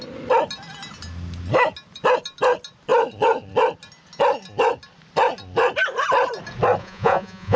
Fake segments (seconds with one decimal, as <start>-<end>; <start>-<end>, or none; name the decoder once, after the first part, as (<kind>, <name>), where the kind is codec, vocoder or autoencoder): 6.8-7.6 (vocoder, Vocos)